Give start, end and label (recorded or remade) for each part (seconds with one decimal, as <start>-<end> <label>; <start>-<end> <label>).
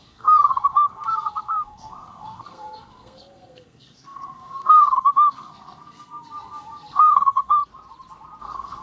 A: 0.0-7.6 remade; 7.6-8.4 recorded; 8.4-8.8 remade